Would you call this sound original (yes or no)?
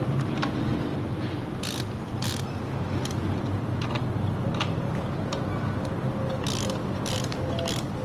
yes